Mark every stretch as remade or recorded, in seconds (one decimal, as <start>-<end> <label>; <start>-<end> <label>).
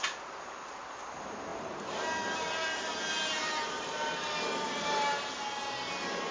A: 0.0-1.5 recorded; 1.5-5.3 remade; 5.3-6.3 recorded